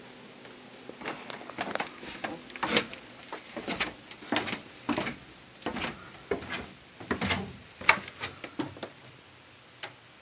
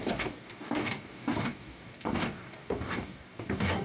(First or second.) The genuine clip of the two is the first